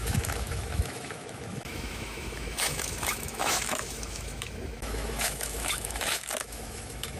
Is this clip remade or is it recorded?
remade